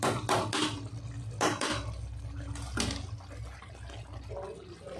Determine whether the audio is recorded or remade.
recorded